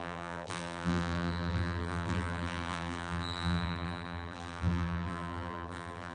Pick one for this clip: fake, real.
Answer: fake